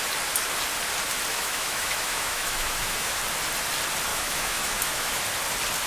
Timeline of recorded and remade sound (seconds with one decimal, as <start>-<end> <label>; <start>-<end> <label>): 0.0-1.3 recorded; 1.3-3.2 remade; 3.2-4.1 recorded; 4.1-5.2 remade; 5.2-5.9 recorded